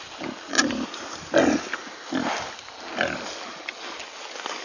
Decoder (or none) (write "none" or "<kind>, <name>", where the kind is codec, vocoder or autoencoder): none